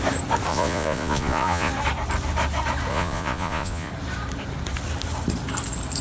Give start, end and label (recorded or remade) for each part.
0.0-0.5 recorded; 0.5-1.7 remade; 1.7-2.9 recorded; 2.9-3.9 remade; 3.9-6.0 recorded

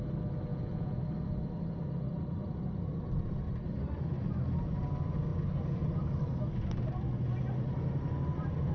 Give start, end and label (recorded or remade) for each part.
0.0-0.5 recorded; 0.5-1.0 remade; 1.0-8.7 recorded

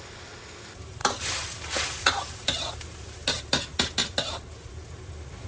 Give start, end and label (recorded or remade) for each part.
0.0-5.5 recorded

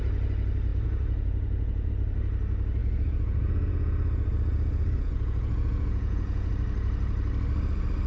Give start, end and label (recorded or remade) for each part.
0.0-0.7 recorded; 0.7-1.9 remade; 1.9-2.8 recorded; 2.8-6.5 remade; 6.5-8.1 recorded